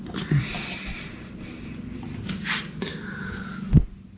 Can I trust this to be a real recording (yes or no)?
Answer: yes